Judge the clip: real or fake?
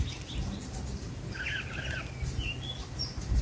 real